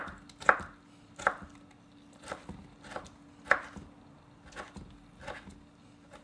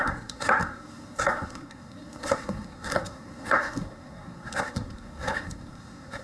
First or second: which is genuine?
first